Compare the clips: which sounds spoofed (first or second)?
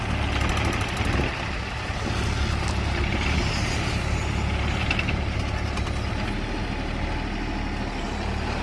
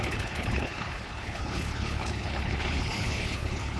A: second